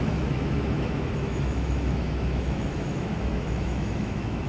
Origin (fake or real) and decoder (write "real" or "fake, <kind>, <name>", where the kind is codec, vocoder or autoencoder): fake, autoencoder, DAC-VAE